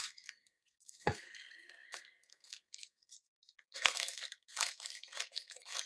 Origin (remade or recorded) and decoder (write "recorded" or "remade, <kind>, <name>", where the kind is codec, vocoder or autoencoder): remade, codec, SNAC